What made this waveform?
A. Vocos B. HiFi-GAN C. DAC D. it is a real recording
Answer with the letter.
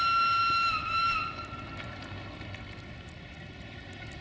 D